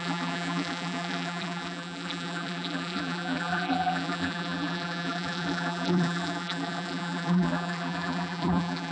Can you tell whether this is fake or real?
fake